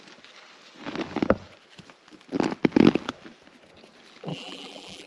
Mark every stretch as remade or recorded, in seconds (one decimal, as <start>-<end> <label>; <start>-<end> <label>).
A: 0.0-4.3 recorded; 4.3-5.1 remade